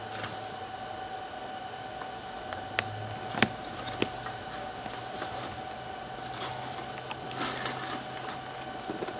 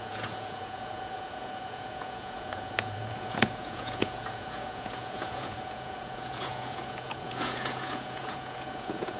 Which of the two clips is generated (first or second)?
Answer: second